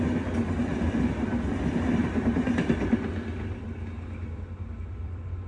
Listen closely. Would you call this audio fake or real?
real